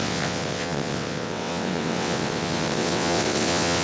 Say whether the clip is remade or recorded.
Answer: remade